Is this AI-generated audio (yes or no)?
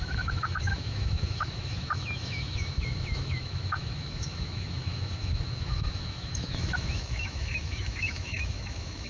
yes